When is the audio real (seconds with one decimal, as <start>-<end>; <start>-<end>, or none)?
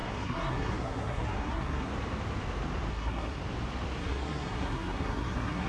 1.9-2.9; 3.4-4.0